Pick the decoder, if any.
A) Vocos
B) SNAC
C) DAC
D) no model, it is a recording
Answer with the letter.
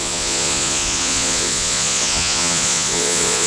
A